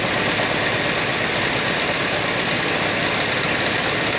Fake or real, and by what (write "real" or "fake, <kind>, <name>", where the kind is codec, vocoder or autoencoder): real